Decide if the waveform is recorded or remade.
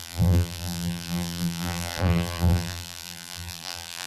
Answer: remade